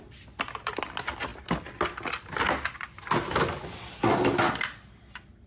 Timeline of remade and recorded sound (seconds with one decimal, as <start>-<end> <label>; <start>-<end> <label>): 0.0-5.5 recorded